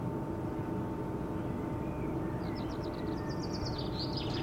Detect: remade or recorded recorded